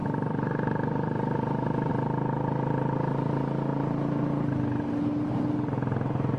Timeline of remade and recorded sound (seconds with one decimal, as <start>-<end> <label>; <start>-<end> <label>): 0.0-1.9 remade; 1.9-6.4 recorded

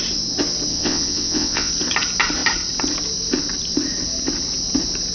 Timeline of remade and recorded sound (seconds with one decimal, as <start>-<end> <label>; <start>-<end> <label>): 0.0-0.7 recorded; 0.7-1.7 remade; 1.7-5.1 recorded

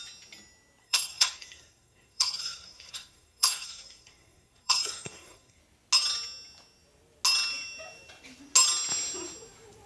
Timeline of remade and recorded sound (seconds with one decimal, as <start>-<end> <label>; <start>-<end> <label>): 0.0-0.8 recorded; 0.8-5.6 remade; 5.6-9.9 recorded

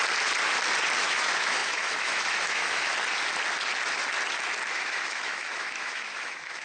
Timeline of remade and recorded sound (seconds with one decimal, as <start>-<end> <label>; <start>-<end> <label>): 0.0-1.0 recorded; 1.0-2.9 remade; 2.9-4.7 recorded; 4.7-6.6 remade